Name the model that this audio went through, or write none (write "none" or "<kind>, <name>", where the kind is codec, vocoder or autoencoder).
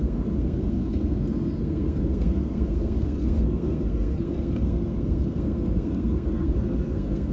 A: codec, SNAC